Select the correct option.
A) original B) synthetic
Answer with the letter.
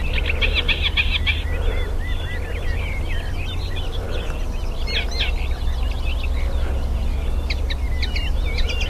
A